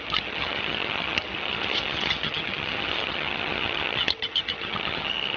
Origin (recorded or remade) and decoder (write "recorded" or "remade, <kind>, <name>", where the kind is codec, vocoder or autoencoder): remade, vocoder, HiFi-GAN